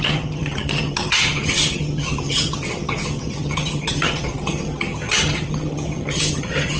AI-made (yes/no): yes